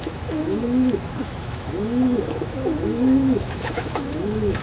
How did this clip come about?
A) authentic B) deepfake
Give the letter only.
B